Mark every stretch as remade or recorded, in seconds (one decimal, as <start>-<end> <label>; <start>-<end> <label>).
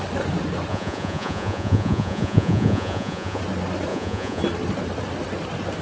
0.0-0.7 recorded; 0.7-3.4 remade; 3.4-3.9 recorded; 3.9-4.4 remade; 4.4-5.8 recorded